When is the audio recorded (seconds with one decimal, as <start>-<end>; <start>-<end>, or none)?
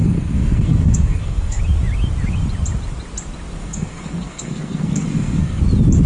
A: 1.6-3.6; 5.6-6.1